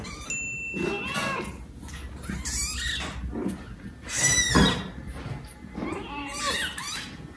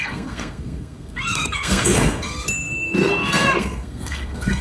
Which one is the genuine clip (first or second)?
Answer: first